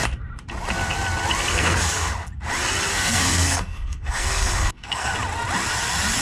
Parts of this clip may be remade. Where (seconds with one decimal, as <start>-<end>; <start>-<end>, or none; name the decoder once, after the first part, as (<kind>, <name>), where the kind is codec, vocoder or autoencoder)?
1.5-2.1 (codec, SNAC); 2.9-5.1